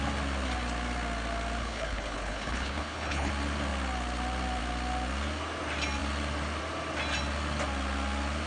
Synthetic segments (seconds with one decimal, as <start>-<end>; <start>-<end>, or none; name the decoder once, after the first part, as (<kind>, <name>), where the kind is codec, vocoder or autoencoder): 1.6-3.3 (codec, HILCodec)